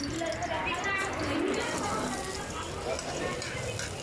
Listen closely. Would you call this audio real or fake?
real